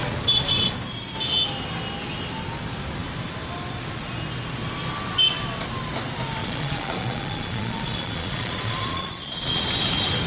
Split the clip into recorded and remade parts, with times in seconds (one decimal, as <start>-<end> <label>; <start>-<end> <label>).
0.0-6.4 recorded; 6.4-9.6 remade; 9.6-10.3 recorded